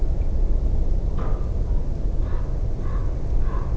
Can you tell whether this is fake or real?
real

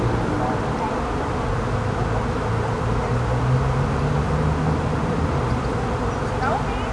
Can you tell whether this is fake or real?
real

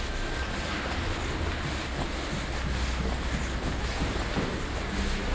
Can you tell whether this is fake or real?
real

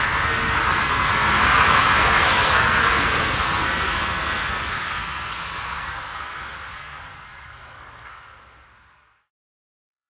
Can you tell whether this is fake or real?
fake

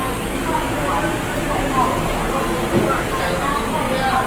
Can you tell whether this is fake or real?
real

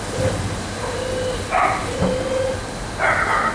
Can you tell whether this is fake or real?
real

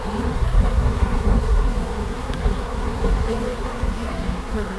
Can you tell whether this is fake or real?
fake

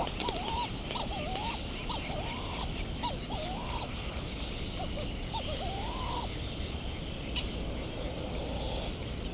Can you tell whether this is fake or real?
real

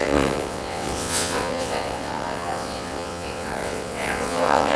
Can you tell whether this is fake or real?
fake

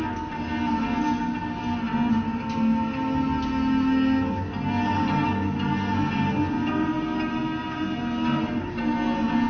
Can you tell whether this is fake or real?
real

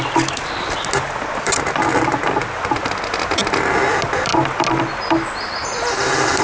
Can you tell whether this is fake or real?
real